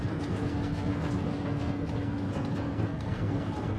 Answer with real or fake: fake